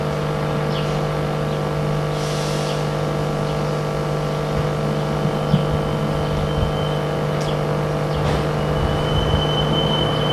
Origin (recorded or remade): recorded